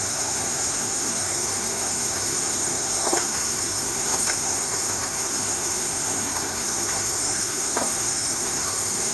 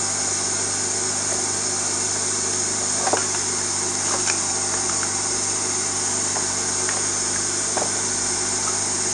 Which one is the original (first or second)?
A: second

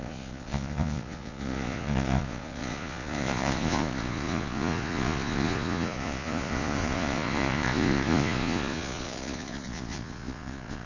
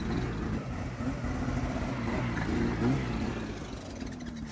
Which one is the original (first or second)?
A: second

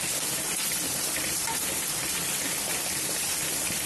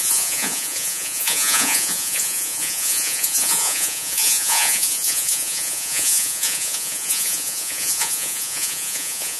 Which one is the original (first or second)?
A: first